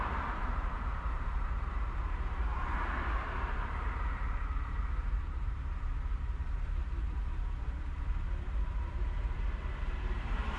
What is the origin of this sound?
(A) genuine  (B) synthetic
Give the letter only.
B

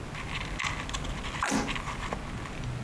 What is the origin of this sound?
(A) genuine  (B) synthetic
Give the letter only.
A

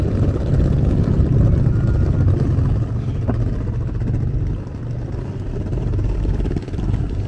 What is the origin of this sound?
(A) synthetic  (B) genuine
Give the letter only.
B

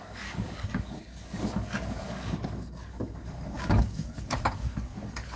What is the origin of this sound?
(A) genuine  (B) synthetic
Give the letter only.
B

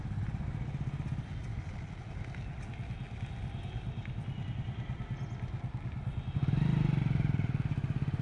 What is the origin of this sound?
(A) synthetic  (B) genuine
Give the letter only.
B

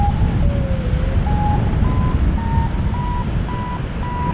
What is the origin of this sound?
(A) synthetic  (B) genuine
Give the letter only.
B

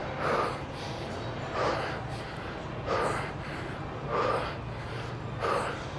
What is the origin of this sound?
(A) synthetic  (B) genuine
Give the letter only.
B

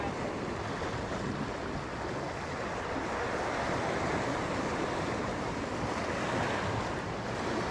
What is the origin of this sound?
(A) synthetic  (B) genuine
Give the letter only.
B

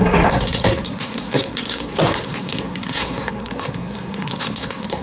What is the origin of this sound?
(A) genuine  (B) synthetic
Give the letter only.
B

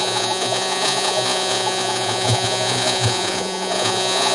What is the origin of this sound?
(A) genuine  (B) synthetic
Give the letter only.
B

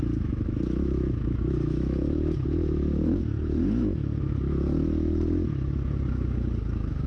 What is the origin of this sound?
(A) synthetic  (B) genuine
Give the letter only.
A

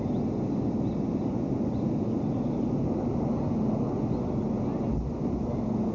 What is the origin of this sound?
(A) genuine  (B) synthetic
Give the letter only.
A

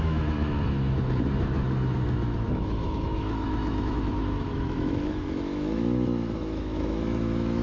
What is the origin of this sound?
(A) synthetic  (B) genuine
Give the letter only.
A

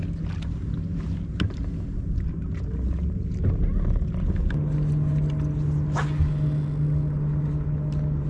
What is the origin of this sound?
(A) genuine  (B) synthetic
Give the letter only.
A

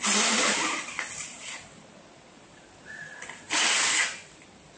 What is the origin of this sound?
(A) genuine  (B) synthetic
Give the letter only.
A